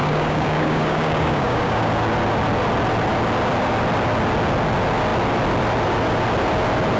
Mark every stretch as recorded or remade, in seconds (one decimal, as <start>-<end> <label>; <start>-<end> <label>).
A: 0.0-1.9 remade; 1.9-7.0 recorded